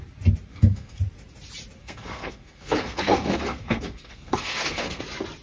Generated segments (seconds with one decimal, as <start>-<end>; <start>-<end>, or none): 0.5-1.0; 1.8-5.0